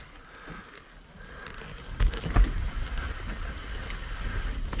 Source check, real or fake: real